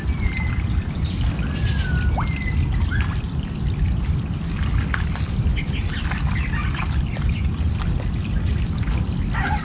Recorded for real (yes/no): yes